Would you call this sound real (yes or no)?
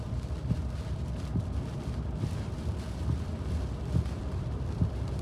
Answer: no